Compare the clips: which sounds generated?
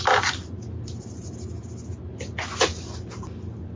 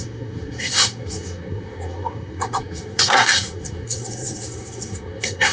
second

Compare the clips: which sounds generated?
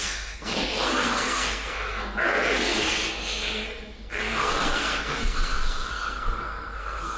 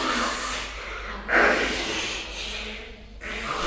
first